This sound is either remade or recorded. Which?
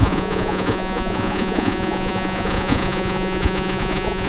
remade